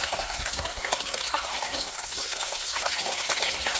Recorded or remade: remade